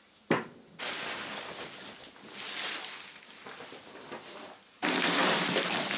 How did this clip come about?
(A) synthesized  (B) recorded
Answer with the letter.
B